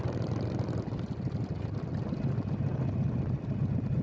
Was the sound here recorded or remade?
recorded